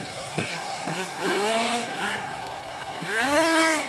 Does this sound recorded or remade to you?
remade